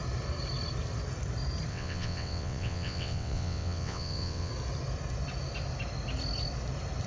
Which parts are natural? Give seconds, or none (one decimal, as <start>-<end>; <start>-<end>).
0.0-1.7; 4.5-7.1

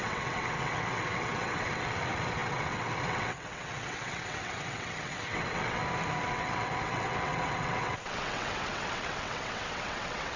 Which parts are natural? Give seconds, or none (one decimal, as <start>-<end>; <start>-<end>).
5.8-6.3

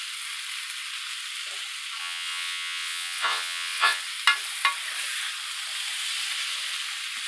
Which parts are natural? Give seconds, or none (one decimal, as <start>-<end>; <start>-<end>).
0.0-2.0; 4.0-7.3

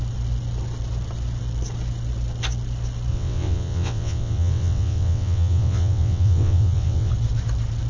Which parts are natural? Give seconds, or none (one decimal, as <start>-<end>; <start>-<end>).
0.0-3.1; 7.1-7.9

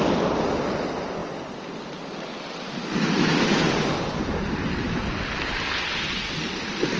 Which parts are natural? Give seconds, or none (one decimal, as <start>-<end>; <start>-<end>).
0.0-7.0